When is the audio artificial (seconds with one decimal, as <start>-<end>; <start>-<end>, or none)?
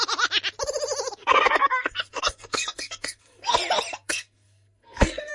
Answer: 1.2-3.5; 3.9-5.3